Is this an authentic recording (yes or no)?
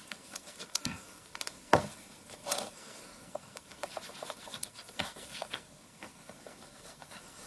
no